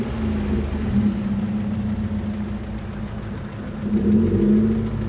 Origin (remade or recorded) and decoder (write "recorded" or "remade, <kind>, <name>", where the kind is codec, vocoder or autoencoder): recorded